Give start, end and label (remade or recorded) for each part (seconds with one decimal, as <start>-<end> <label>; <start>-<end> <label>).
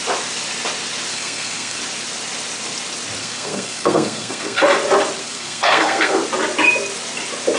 0.0-1.1 recorded; 1.1-1.8 remade; 1.8-3.2 recorded; 3.2-4.6 remade; 4.6-5.2 recorded; 5.2-6.2 remade; 6.2-7.6 recorded